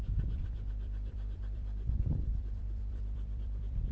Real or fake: fake